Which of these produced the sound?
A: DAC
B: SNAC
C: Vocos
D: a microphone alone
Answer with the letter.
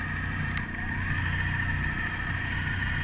D